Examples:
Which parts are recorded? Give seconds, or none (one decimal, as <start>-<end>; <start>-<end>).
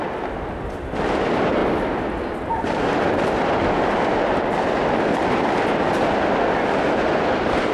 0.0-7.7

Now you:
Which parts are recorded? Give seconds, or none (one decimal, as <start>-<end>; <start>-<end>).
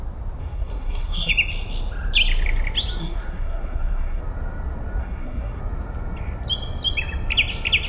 0.0-0.4; 1.3-3.0; 4.2-5.0; 5.6-7.9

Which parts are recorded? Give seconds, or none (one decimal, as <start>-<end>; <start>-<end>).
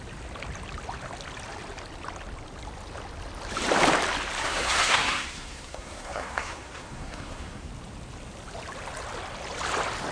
0.0-4.4; 7.7-10.1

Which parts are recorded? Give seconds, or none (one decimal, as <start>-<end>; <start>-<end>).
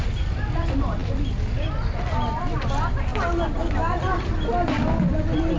0.0-5.6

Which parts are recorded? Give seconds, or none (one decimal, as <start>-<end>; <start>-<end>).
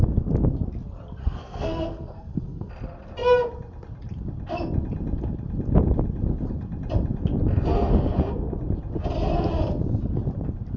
0.0-1.2; 2.7-10.8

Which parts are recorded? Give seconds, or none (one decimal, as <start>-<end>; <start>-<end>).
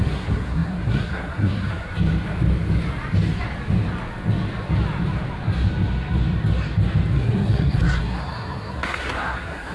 1.9-7.1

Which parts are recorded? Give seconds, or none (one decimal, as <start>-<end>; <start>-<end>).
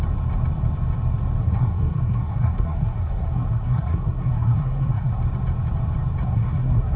0.0-1.4; 5.2-6.2